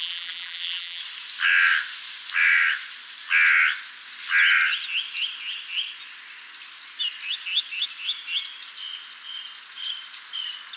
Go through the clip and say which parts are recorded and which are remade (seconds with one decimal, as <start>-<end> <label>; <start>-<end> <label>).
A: 0.0-1.0 remade; 1.0-10.8 recorded